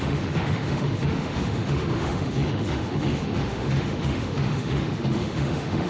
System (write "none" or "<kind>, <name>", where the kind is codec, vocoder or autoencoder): autoencoder, DAC-VAE